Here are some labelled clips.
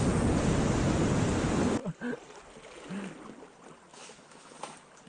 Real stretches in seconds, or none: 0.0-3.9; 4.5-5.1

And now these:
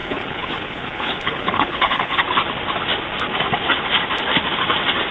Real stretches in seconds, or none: 2.2-5.1

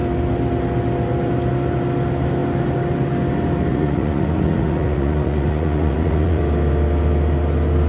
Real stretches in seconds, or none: 0.0-3.7; 6.4-7.9

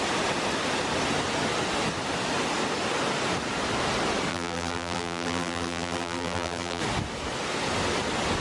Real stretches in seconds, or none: 0.0-4.3; 6.8-8.4

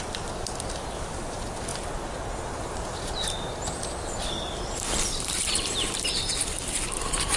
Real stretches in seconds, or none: 0.0-7.4